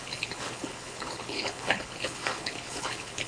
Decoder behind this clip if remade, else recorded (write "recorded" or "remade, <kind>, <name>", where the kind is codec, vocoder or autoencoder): remade, codec, HILCodec